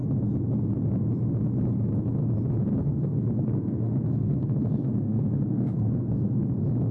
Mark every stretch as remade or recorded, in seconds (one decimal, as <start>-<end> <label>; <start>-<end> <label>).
0.0-2.8 recorded; 2.8-6.4 remade; 6.4-6.9 recorded